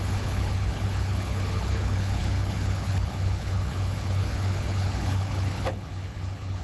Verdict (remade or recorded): remade